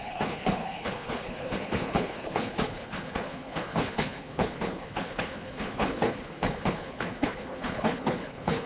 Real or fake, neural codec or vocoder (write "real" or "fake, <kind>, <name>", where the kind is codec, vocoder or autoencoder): fake, codec, HILCodec